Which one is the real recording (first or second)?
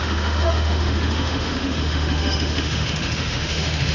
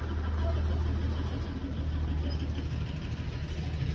second